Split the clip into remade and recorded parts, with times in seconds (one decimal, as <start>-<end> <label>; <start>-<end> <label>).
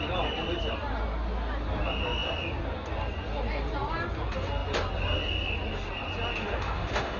0.0-6.4 recorded; 6.4-7.2 remade